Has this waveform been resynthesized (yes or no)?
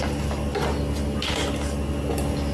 no